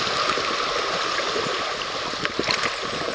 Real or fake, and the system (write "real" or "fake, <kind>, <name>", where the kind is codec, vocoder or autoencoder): real